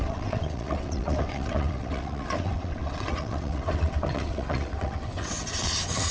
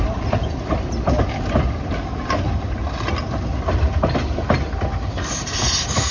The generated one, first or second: first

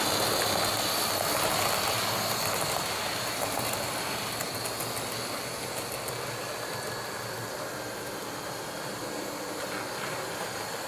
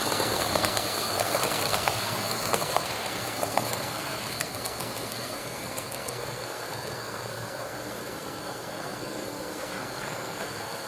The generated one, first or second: second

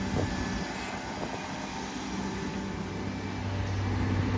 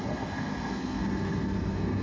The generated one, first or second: second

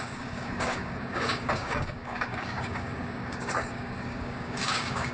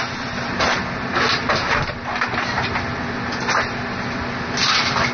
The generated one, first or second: first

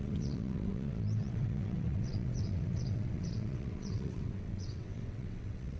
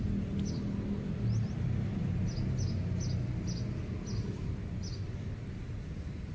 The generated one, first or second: first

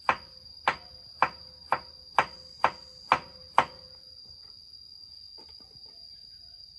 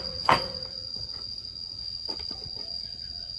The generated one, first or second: second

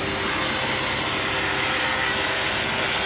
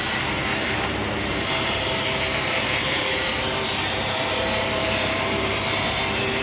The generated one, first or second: second